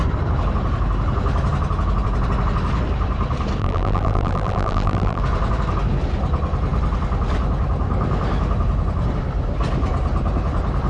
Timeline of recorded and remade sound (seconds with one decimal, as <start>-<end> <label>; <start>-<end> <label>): 0.0-3.6 recorded; 3.6-5.2 remade; 5.2-10.9 recorded